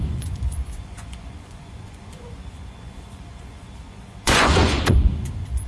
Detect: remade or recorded remade